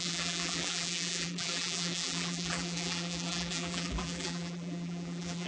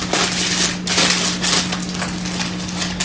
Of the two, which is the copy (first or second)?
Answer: first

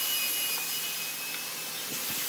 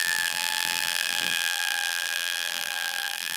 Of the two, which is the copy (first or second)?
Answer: second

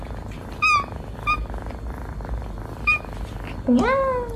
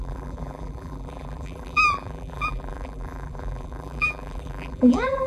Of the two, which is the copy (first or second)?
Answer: second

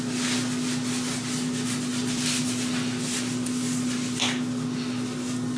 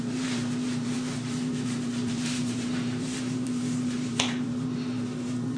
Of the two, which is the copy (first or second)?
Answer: second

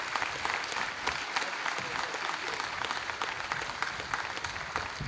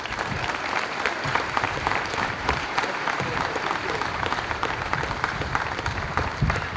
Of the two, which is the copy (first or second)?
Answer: second